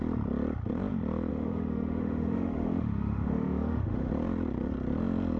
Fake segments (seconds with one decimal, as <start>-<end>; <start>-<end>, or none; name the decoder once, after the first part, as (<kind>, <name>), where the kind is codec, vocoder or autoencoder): 1.3-4.1 (autoencoder, DAC-VAE)